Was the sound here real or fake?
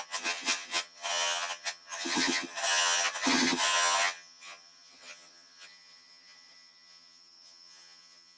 fake